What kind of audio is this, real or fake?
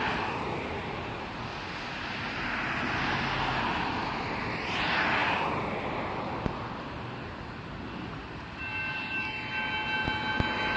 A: real